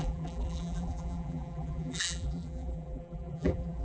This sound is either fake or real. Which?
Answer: fake